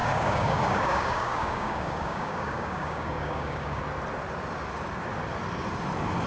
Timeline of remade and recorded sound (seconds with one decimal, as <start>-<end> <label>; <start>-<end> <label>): 0.0-3.8 remade; 3.8-6.3 recorded